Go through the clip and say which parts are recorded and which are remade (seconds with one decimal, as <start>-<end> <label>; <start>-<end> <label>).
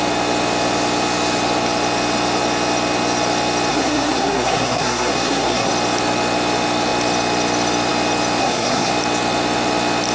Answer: 0.0-3.7 recorded; 3.7-5.7 remade; 5.7-8.4 recorded; 8.4-8.9 remade; 8.9-10.1 recorded